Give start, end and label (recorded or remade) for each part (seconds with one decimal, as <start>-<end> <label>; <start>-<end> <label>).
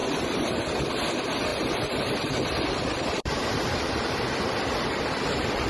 0.0-1.5 recorded; 1.5-4.1 remade; 4.1-5.7 recorded